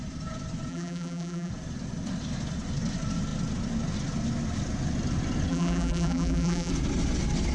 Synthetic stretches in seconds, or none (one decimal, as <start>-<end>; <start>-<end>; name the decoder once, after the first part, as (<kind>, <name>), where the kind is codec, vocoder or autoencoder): 0.7-1.5 (vocoder, BigVGAN v2); 5.5-6.7